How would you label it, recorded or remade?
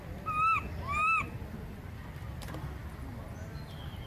recorded